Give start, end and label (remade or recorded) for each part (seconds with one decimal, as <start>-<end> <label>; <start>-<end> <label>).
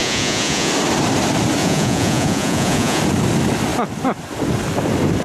0.0-0.7 remade; 0.7-1.6 recorded; 1.6-3.0 remade; 3.0-5.2 recorded